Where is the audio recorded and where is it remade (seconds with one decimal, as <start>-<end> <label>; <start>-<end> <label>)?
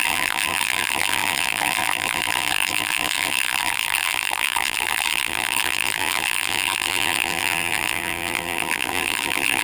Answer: 0.0-9.6 remade